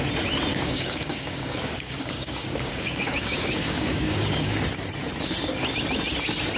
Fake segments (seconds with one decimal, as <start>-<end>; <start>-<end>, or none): 0.5-4.5